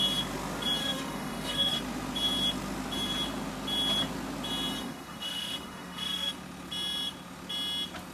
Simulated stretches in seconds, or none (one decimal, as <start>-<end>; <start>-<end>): 0.8-1.8; 4.8-6.3